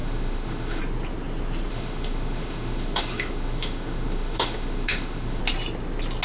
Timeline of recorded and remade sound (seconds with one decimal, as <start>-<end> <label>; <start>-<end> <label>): 0.0-0.8 remade; 0.8-1.7 recorded; 1.7-5.4 remade; 5.4-6.2 recorded

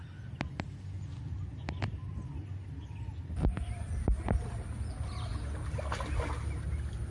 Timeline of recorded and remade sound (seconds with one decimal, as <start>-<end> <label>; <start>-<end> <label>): 0.0-7.1 recorded

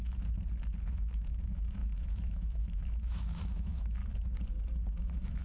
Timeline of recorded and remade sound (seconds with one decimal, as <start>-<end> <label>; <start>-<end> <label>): 0.0-0.9 recorded; 0.9-4.0 remade; 4.0-5.0 recorded; 5.0-5.4 remade